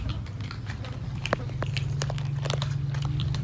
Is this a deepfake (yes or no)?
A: no